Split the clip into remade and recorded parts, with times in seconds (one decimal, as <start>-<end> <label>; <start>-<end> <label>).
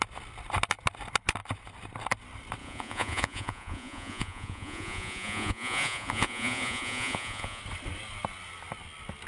0.0-2.6 recorded; 2.6-7.6 remade; 7.6-9.3 recorded